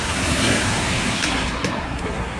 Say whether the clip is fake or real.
fake